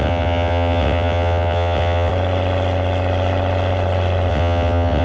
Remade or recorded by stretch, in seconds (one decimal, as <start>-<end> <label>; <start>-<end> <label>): 0.0-2.1 remade; 2.1-4.3 recorded; 4.3-5.0 remade